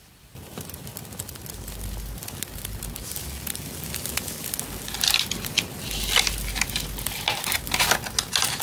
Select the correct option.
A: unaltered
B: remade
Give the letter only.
A